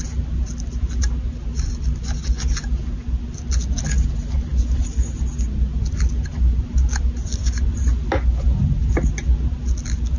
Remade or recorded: recorded